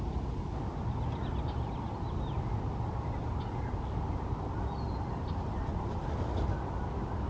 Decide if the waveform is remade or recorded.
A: recorded